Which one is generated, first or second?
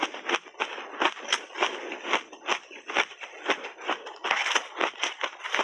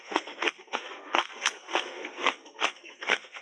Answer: second